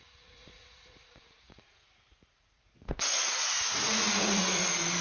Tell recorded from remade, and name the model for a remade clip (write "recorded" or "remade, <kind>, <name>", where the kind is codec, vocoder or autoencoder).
remade, vocoder, Vocos